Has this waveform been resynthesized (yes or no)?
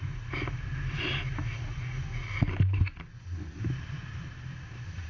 no